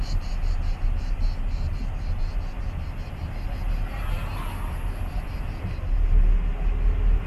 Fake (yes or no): no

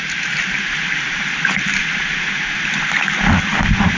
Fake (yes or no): no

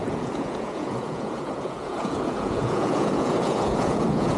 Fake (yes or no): yes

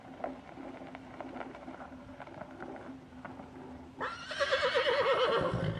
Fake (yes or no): no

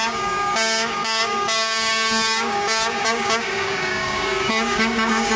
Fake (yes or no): yes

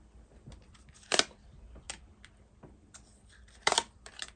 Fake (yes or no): yes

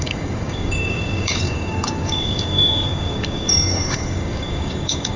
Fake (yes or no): yes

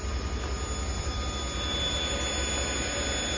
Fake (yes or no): no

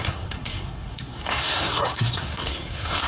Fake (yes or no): yes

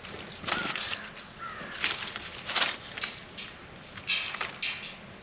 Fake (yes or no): no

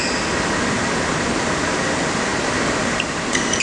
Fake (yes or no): no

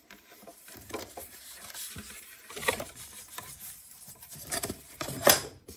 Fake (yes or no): yes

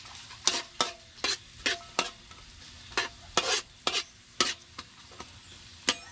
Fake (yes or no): no